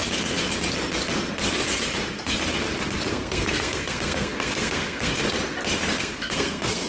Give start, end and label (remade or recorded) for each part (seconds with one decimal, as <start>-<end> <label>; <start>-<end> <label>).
0.0-3.1 recorded; 3.1-5.1 remade; 5.1-6.0 recorded; 6.0-6.9 remade